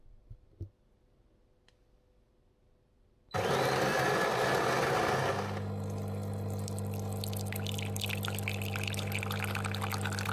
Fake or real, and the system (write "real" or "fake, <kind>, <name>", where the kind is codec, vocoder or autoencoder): real